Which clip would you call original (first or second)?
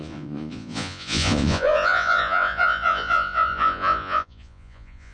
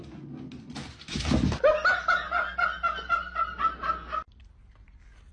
second